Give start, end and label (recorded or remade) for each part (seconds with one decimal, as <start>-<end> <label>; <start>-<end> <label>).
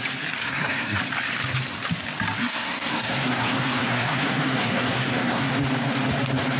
0.0-0.4 recorded; 0.4-1.0 remade; 1.0-2.4 recorded; 2.4-5.5 remade; 5.5-6.6 recorded